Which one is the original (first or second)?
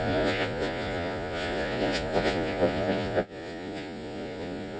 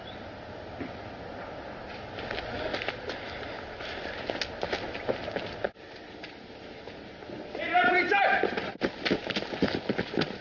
second